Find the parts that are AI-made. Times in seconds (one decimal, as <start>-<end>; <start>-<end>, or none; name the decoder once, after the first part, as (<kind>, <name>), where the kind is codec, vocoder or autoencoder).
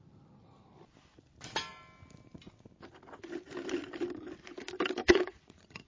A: 5.0-5.9 (vocoder, Vocos)